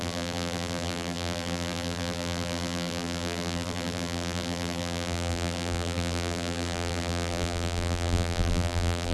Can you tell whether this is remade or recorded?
remade